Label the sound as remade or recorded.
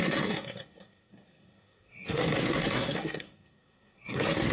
remade